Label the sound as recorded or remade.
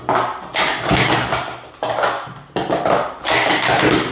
recorded